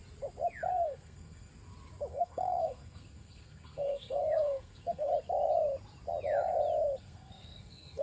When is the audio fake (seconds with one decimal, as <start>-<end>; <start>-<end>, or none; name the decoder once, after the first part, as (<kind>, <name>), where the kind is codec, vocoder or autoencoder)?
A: 0.7-1.5 (codec, SNAC); 2.1-5.1; 7.0-8.0